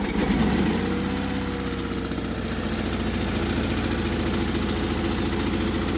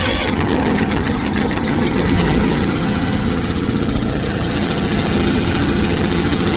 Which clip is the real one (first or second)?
first